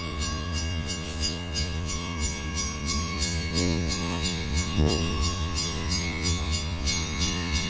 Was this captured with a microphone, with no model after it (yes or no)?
no